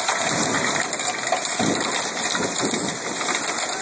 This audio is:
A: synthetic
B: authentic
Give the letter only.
B